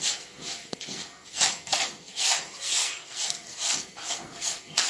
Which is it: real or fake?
fake